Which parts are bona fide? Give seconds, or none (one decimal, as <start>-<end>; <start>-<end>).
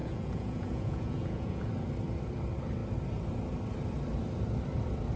1.7-5.2